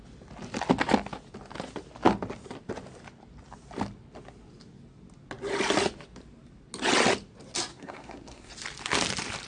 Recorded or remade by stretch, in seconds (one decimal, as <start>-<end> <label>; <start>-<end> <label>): 0.0-7.7 recorded; 7.7-8.5 remade; 8.5-9.5 recorded